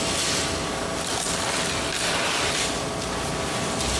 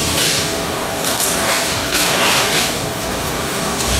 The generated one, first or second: second